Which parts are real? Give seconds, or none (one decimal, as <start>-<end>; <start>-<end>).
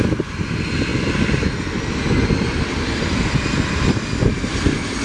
0.0-5.0